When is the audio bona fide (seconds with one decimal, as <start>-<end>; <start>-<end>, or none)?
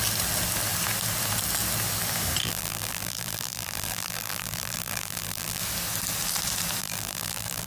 0.0-2.4; 5.6-6.8